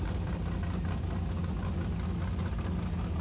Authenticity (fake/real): real